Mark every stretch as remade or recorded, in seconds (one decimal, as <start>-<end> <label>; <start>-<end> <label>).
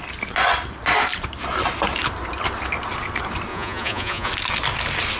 0.0-3.5 recorded; 3.5-4.3 remade; 4.3-5.2 recorded